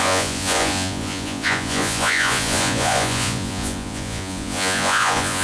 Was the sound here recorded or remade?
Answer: remade